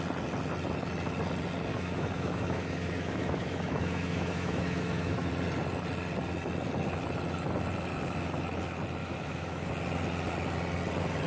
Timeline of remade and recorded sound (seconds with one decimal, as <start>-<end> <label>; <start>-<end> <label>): 0.0-1.7 recorded; 1.7-5.3 remade; 5.3-9.0 recorded; 9.0-9.7 remade; 9.7-11.3 recorded